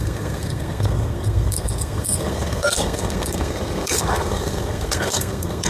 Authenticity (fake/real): fake